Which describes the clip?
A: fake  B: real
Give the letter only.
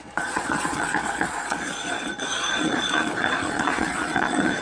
A